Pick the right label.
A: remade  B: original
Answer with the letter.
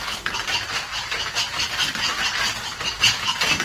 B